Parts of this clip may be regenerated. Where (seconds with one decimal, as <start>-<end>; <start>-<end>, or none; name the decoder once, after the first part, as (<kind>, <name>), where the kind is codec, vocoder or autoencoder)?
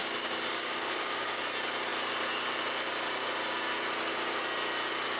0.0-1.4 (codec, DAC)